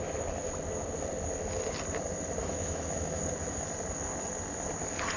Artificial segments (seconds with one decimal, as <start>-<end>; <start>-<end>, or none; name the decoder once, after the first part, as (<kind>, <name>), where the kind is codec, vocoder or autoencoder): 2.4-3.2 (autoencoder, DAC-VAE)